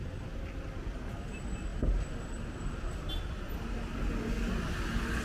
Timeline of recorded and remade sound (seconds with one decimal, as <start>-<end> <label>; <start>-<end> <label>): 0.0-5.2 recorded